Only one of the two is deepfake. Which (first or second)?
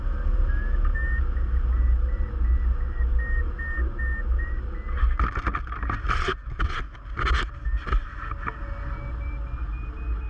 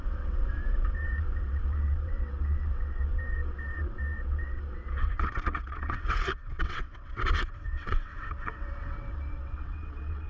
second